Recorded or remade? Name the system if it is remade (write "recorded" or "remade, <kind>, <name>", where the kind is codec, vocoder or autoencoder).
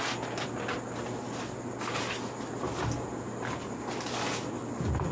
recorded